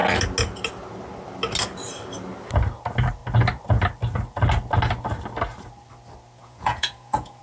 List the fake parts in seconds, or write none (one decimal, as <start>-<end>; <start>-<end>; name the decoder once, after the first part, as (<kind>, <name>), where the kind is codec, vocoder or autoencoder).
6.4-7.4 (vocoder, Vocos)